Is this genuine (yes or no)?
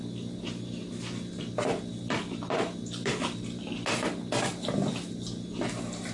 yes